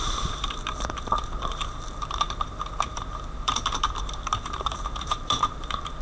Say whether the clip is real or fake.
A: fake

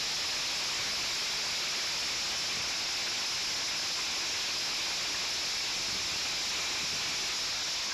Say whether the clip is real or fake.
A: real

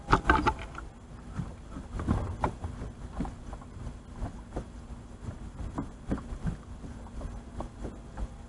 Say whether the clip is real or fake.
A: real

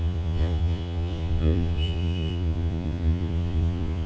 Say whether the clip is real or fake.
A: fake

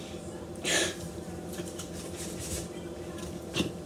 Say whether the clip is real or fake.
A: fake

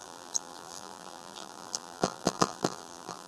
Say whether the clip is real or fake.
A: fake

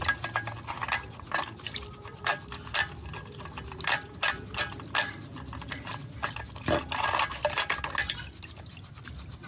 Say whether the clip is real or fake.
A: real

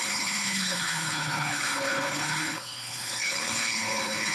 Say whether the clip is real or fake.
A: fake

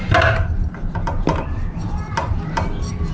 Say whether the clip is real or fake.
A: real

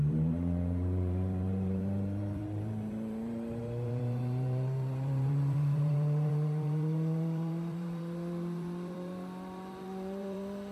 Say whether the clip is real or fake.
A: fake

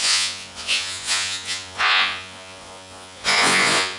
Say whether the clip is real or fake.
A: fake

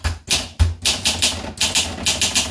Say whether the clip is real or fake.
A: real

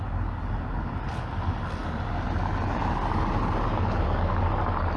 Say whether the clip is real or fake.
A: real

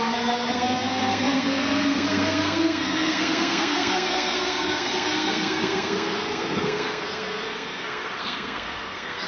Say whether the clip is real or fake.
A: fake